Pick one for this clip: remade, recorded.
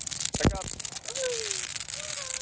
recorded